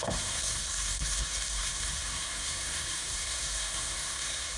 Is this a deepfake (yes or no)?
yes